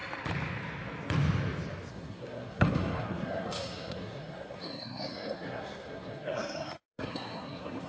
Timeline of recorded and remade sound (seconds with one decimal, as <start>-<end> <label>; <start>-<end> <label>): 0.0-1.9 recorded; 1.9-7.9 remade